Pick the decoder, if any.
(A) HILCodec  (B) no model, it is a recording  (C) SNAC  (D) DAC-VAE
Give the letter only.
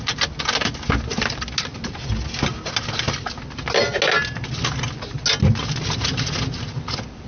B